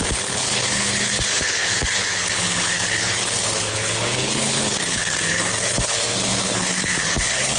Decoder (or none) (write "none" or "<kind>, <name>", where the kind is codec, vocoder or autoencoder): codec, HILCodec